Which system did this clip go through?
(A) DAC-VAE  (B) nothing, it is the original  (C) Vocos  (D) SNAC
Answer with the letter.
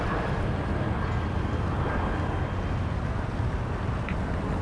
B